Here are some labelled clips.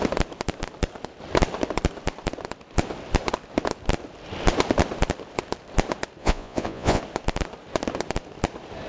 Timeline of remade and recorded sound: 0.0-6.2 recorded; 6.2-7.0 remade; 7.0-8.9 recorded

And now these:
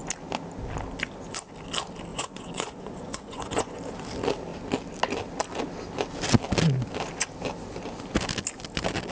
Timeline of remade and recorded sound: 0.0-2.1 recorded; 2.1-3.8 remade; 3.8-9.1 recorded